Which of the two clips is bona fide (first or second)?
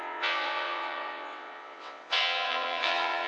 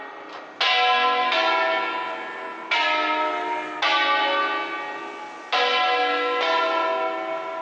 second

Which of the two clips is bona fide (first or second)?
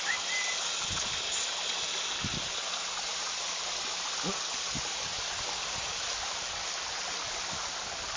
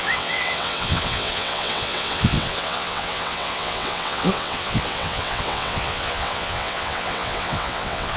first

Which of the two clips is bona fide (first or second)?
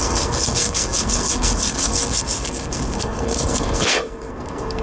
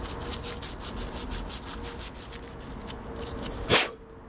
second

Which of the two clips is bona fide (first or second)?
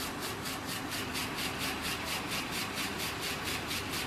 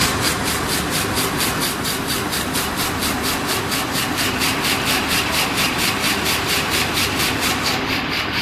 first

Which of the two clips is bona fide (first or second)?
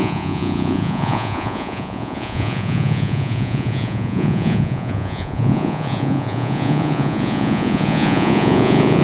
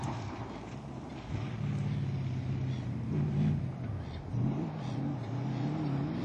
second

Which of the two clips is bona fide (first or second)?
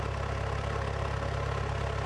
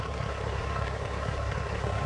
first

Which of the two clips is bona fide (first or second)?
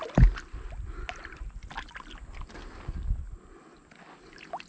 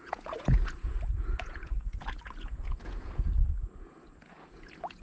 first